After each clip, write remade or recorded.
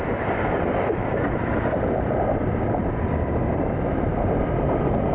recorded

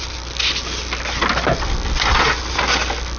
recorded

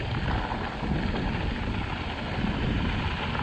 recorded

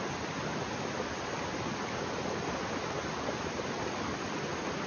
recorded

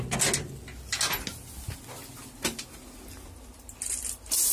recorded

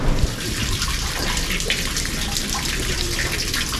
recorded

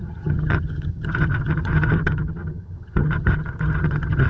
remade